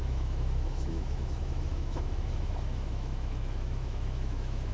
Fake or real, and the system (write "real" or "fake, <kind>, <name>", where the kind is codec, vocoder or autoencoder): fake, autoencoder, DAC-VAE